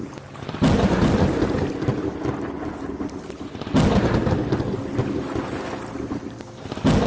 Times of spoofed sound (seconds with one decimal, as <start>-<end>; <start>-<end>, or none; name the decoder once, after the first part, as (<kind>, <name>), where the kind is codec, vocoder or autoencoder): none